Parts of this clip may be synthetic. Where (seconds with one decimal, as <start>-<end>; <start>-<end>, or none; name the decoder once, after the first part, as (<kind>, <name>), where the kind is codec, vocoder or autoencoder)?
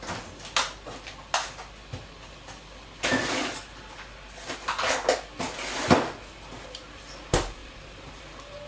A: 7.6-8.2 (vocoder, BigVGAN v2)